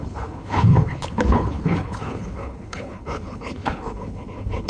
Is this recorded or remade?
remade